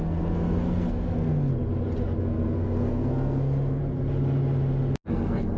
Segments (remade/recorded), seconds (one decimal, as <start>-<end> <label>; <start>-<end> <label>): 0.0-1.5 remade; 1.5-2.2 recorded; 2.2-3.8 remade; 3.8-5.1 recorded; 5.1-5.6 remade